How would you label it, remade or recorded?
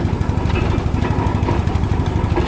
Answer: recorded